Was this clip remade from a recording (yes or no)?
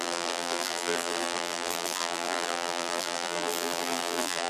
yes